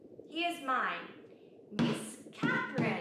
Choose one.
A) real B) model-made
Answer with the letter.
A